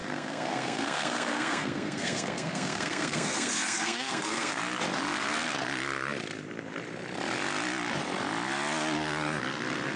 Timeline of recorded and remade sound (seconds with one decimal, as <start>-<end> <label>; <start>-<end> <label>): 0.0-4.6 remade; 4.6-10.0 recorded